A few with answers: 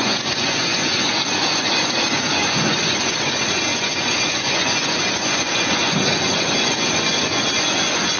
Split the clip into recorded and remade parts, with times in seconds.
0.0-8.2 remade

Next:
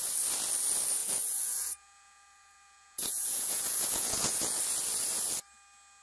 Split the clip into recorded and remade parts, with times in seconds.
0.0-1.0 recorded; 1.0-4.6 remade; 4.6-6.0 recorded